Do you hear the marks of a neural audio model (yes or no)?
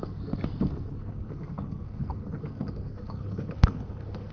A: yes